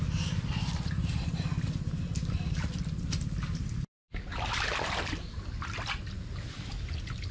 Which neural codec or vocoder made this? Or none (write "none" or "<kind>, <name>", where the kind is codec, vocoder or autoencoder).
none